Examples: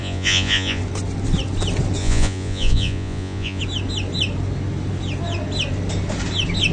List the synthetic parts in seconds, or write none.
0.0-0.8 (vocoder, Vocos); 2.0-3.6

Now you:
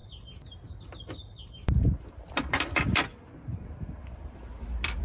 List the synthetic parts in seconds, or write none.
none

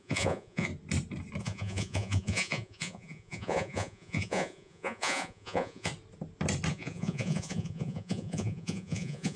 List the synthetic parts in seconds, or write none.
0.0-0.7 (vocoder, Vocos); 1.4-5.9; 6.7-9.4

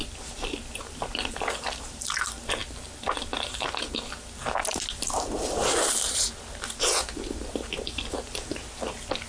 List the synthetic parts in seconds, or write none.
none

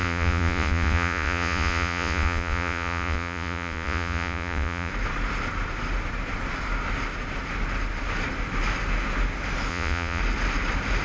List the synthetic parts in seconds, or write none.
0.0-4.9 (vocoder, Vocos); 9.7-10.2

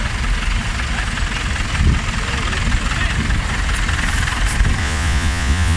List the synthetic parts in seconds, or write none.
4.8-5.8 (vocoder, Vocos)

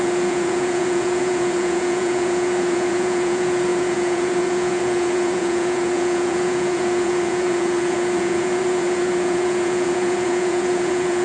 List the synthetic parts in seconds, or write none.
0.0-11.2 (vocoder, Vocos)

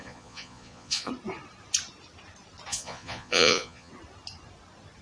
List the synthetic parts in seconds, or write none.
0.0-1.1 (vocoder, Vocos); 2.7-3.9